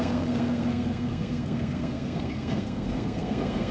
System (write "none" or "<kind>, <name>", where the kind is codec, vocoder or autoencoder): codec, SNAC